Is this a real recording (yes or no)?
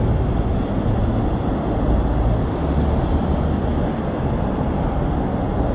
yes